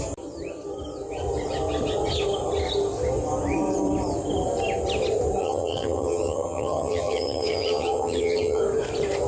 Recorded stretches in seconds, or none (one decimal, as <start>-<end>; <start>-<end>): 0.0-5.4; 8.6-9.3